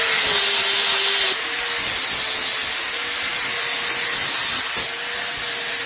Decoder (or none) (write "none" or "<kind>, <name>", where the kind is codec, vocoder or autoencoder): none